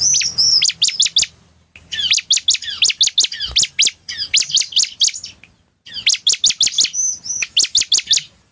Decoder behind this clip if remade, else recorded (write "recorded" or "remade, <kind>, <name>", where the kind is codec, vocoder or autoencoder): recorded